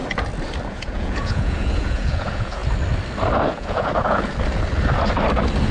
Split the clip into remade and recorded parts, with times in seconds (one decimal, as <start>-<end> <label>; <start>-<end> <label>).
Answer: 0.0-0.7 recorded; 0.7-2.6 remade; 2.6-3.5 recorded; 3.5-4.3 remade; 4.3-5.7 recorded